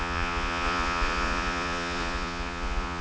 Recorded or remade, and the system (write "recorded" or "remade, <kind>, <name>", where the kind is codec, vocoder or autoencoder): remade, vocoder, Vocos